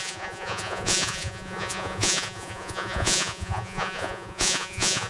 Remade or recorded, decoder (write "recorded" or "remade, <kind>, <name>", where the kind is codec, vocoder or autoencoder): remade, vocoder, Vocos